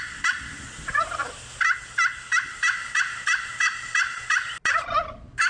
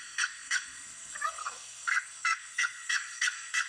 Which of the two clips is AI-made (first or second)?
second